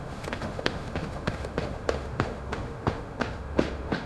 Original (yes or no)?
no